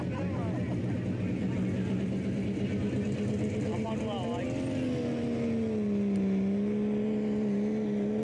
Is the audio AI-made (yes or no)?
no